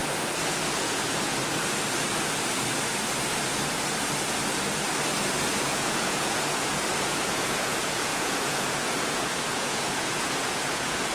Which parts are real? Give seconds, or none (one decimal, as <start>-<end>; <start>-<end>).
0.0-0.8; 1.4-5.6